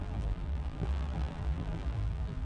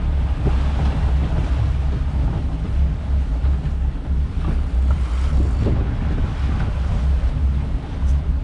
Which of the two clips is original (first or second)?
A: second